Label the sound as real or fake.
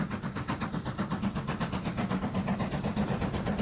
real